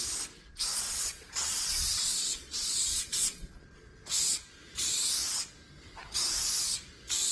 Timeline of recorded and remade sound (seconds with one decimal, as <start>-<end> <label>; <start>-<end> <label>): 0.0-0.7 recorded; 0.7-3.6 remade; 3.6-7.3 recorded